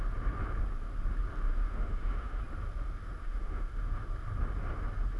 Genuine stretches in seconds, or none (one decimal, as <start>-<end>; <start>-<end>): 0.0-1.5; 2.4-3.2; 4.0-5.2